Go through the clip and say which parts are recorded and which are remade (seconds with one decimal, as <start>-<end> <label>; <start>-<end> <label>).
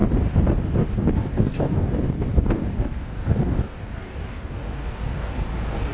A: 0.0-0.8 recorded; 0.8-5.9 remade